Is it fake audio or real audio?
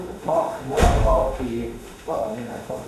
fake